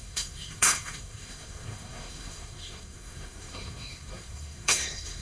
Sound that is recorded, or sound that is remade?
remade